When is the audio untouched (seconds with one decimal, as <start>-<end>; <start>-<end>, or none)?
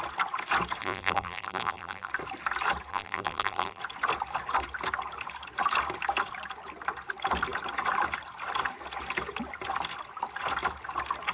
0.0-0.8; 2.1-2.9; 3.8-11.3